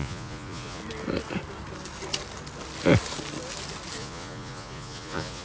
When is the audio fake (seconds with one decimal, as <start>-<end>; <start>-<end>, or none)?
0.0-0.8; 4.0-5.4